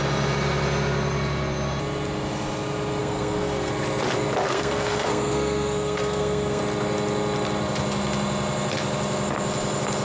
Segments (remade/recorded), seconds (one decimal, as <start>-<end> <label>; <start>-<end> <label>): 0.0-3.0 recorded; 3.0-3.7 remade; 3.7-4.5 recorded; 4.5-6.6 remade; 6.6-10.0 recorded